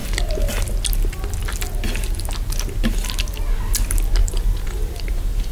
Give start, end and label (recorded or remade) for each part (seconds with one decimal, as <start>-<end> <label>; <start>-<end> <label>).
0.0-4.2 recorded; 4.2-5.5 remade